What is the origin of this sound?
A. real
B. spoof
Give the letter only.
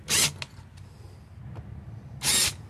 A